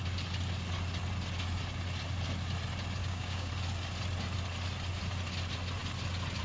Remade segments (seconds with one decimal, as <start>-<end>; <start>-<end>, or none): 3.0-3.5